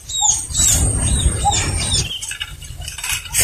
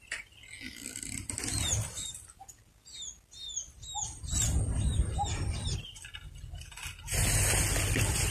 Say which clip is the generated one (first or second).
first